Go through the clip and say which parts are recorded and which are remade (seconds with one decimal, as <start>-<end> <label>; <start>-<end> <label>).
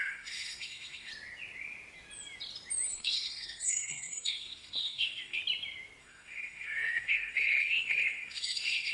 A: 0.0-1.1 remade; 1.1-2.9 recorded; 2.9-5.4 remade; 5.4-6.0 recorded; 6.0-8.9 remade